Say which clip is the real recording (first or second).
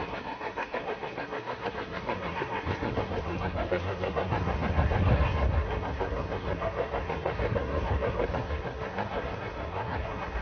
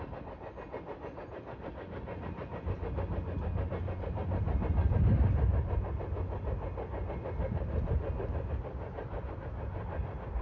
second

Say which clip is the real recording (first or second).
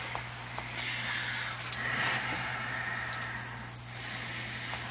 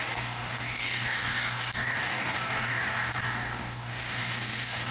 first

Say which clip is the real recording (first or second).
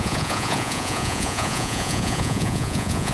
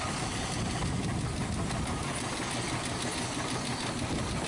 second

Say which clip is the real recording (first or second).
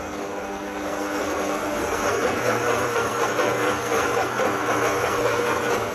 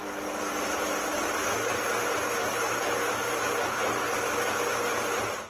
second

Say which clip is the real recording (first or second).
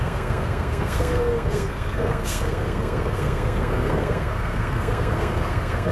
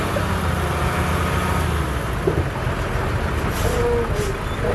second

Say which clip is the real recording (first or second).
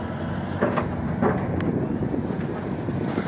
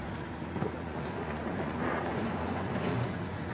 first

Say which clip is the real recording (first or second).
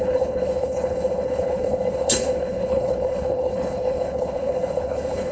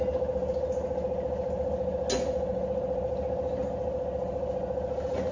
second